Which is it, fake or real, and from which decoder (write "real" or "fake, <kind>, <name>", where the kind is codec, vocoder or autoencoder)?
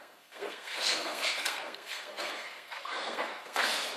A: fake, codec, SNAC